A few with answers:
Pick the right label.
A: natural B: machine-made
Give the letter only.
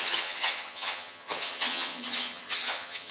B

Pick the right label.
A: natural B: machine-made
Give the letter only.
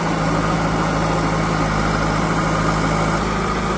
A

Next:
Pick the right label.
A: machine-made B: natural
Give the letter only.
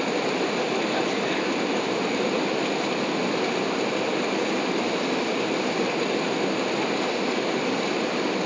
B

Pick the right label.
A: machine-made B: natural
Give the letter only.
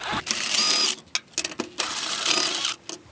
B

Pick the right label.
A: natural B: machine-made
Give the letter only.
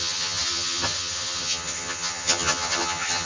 B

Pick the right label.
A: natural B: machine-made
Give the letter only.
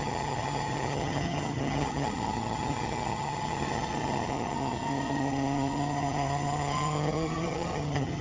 B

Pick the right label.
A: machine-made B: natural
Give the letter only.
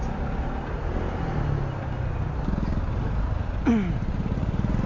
B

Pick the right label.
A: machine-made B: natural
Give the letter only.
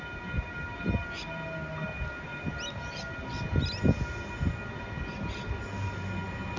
B